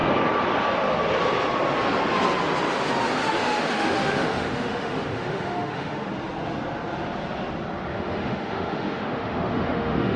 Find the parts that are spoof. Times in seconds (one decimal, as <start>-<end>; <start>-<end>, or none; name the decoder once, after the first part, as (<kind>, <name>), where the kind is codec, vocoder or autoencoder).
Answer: 3.2-6.1 (autoencoder, DAC-VAE); 7.9-10.2